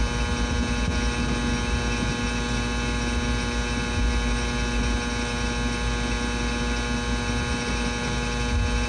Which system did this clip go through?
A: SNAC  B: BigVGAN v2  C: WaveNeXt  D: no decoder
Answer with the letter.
D